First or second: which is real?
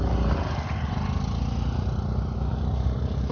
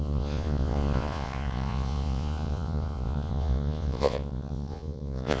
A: first